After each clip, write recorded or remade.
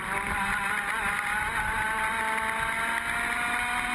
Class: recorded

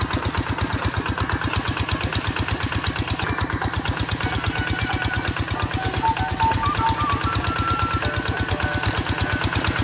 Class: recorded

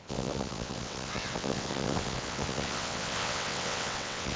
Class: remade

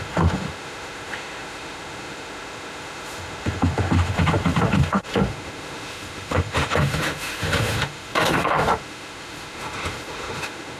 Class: remade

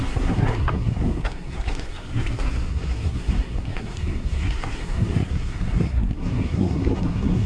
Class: remade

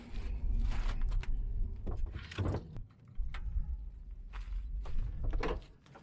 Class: recorded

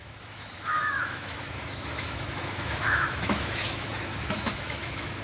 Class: remade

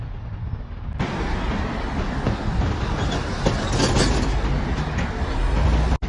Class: recorded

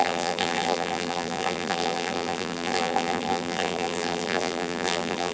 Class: remade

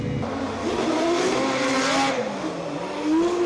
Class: recorded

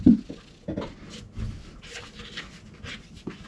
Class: recorded